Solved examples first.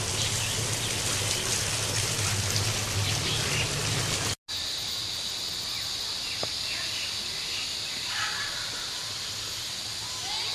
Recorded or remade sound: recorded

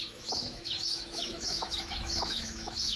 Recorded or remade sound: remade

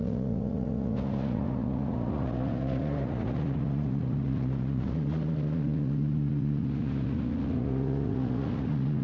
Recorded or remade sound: remade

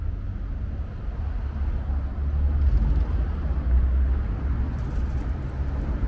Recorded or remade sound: recorded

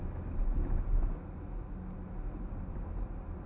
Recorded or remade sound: recorded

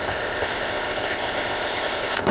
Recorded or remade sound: remade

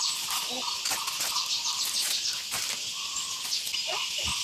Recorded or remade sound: recorded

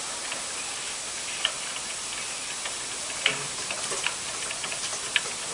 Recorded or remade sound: recorded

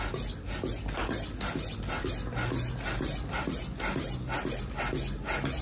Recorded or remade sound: recorded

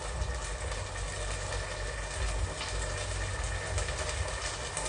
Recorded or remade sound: recorded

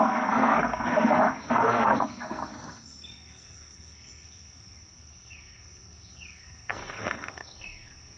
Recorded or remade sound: remade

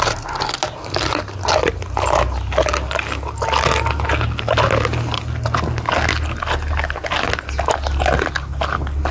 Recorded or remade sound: recorded